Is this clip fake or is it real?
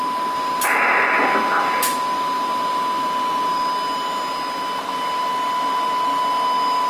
real